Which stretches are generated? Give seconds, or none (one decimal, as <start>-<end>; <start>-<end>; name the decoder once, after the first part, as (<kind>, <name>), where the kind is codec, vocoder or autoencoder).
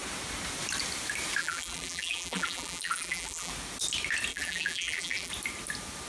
1.4-3.5 (vocoder, BigVGAN v2); 4.3-5.3